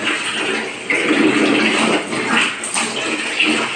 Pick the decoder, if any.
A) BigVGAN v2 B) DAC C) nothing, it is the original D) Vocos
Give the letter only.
C